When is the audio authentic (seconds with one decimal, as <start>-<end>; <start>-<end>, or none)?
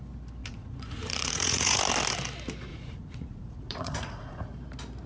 0.0-0.4; 1.8-2.7; 4.5-5.1